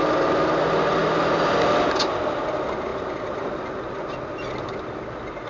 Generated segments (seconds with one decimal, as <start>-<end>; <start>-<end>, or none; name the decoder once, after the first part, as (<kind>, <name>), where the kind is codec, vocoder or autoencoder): none

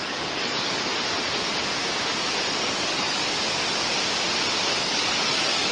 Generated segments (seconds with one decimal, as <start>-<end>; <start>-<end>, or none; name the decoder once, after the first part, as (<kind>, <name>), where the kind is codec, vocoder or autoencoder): 0.0-0.9 (codec, DAC); 2.5-3.2; 4.8-5.7